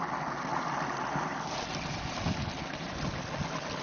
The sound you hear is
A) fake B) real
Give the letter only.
B